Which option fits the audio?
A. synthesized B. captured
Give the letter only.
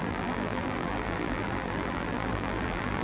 A